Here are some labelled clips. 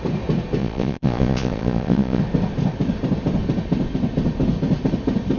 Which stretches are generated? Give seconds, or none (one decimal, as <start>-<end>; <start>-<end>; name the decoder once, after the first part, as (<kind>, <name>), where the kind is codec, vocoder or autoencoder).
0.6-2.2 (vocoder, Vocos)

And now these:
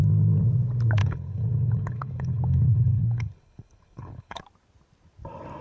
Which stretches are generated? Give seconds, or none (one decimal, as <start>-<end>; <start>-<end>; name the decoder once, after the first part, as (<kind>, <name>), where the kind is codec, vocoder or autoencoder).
1.0-4.4 (codec, HILCodec)

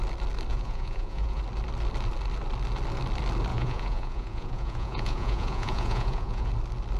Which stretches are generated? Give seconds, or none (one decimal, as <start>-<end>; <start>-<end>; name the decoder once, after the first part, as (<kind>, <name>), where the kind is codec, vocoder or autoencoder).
0.5-1.4 (vocoder, Vocos); 3.5-6.5

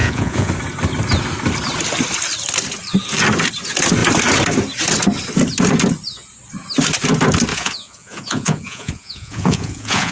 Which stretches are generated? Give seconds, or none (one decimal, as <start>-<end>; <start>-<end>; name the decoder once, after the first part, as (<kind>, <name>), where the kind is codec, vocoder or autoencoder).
0.0-0.5 (vocoder, Vocos); 7.5-10.1

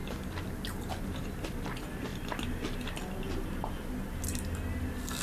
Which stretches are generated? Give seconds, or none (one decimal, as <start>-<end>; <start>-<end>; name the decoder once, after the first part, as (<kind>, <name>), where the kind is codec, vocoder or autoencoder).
none

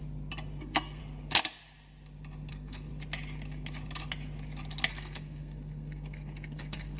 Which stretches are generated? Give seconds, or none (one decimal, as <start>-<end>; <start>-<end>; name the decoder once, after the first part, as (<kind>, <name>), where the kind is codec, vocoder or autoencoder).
0.6-1.0 (codec, SNAC); 2.5-2.9; 4.9-7.0